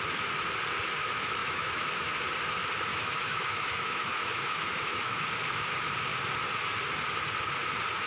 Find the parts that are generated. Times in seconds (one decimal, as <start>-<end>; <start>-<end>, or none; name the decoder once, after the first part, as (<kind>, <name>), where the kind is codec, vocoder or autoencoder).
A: 1.4-2.1 (autoencoder, DAC-VAE); 2.9-5.3